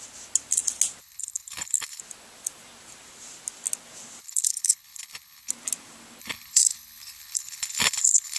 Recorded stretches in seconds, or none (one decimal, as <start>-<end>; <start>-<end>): 0.0-1.0; 2.0-4.2; 5.5-6.2